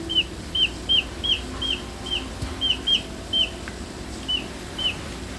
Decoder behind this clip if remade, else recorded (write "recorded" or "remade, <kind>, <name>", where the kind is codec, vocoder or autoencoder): remade, vocoder, BigVGAN v2